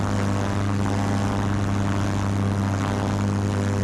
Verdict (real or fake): real